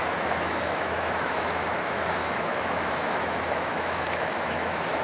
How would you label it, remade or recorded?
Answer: remade